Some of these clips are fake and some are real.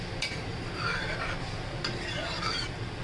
real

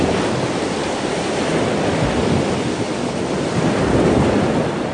real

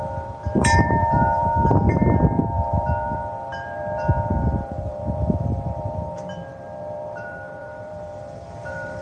fake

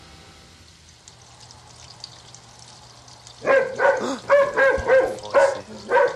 real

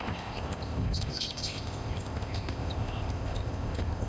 fake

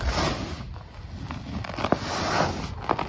real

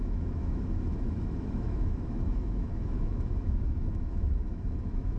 fake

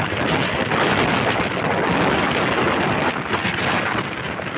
real